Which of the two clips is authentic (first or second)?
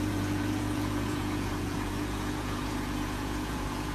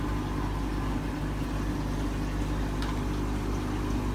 second